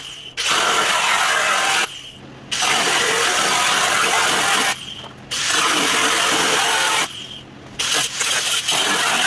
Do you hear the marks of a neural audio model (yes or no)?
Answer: no